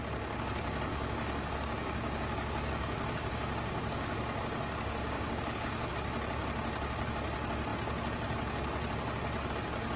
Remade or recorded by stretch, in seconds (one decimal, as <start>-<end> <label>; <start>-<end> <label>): 0.0-0.9 recorded; 0.9-5.9 remade; 5.9-10.0 recorded